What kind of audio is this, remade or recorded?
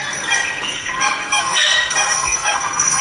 remade